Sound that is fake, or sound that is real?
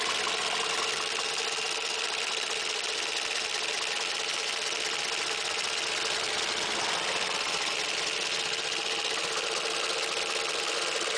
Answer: real